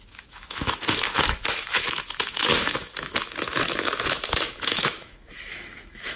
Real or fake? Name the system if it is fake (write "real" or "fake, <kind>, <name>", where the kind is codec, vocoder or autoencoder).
fake, autoencoder, DAC-VAE